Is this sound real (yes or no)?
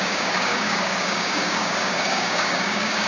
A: no